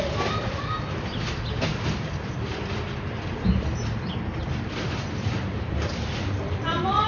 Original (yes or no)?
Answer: no